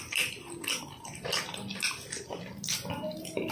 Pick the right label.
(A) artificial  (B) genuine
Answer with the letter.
B